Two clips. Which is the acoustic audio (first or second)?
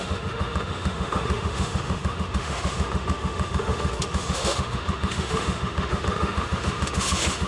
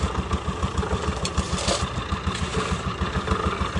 second